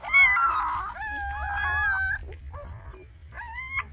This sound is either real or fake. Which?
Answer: real